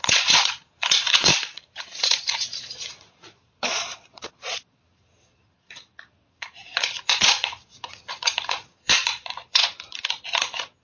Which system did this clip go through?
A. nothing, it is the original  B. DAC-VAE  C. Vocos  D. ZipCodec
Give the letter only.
C